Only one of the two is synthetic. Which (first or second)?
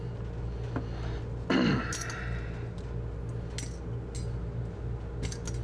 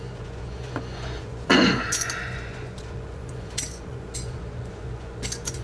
second